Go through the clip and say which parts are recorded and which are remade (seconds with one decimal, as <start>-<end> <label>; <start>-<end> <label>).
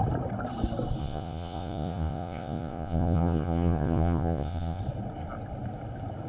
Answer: 0.0-1.0 recorded; 1.0-4.8 remade; 4.8-6.3 recorded